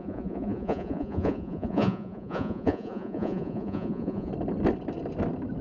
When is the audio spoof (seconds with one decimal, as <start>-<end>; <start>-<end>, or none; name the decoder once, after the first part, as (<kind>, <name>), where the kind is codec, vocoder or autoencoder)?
0.0-4.3 (vocoder, Vocos)